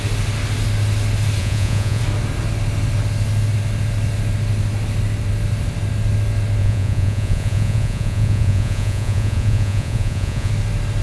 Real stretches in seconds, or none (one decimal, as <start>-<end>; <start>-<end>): 0.0-1.4; 2.0-6.6; 10.5-11.0